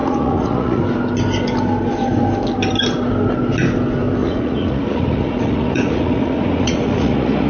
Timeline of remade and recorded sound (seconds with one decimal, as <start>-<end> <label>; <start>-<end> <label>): 0.0-0.8 remade; 0.8-4.2 recorded; 4.2-7.5 remade